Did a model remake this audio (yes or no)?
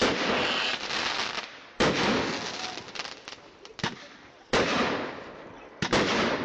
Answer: no